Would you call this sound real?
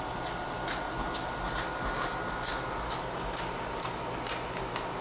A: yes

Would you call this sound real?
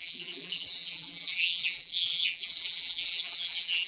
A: no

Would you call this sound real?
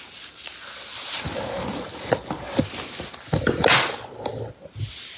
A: yes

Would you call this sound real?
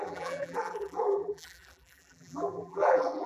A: no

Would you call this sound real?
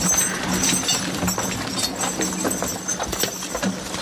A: yes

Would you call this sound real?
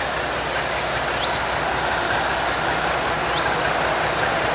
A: yes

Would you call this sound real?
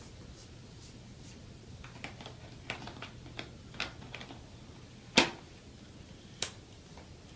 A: yes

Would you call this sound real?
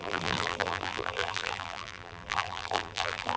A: no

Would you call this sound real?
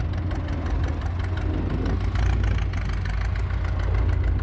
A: yes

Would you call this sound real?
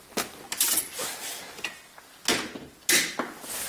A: yes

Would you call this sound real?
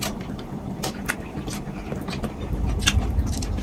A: no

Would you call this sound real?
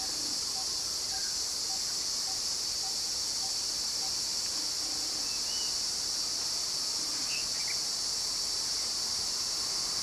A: yes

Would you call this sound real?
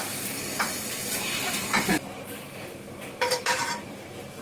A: no